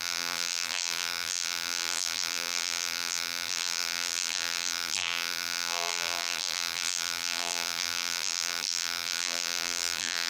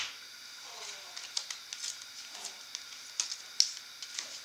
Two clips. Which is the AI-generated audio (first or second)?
first